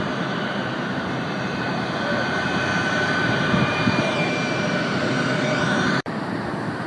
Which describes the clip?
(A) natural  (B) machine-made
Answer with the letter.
B